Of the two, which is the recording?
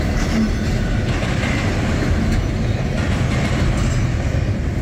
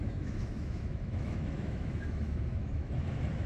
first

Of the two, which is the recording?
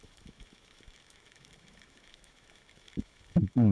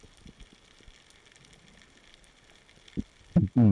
second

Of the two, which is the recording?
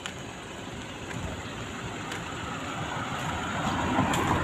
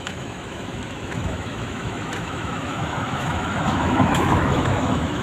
first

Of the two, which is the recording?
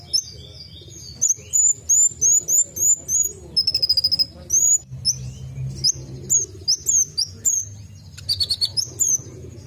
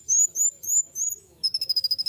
first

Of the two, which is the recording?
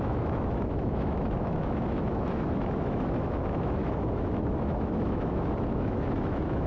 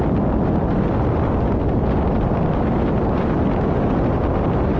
second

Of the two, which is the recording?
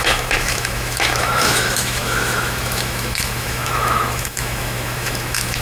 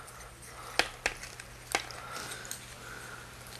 second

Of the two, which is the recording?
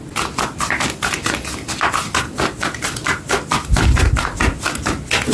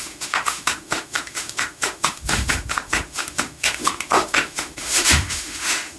first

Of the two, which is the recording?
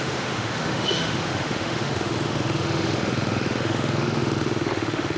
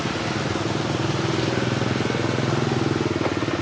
second